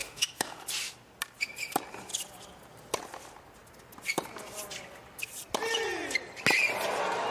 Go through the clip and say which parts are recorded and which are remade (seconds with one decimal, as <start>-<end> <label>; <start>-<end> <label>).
0.0-0.6 remade; 0.6-7.3 recorded